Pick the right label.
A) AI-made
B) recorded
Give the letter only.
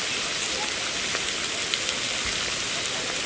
B